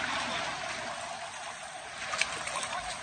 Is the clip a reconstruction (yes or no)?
no